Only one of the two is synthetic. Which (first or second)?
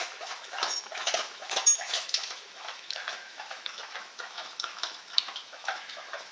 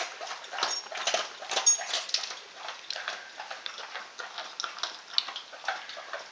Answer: first